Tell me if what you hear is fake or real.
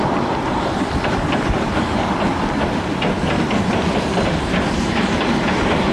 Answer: fake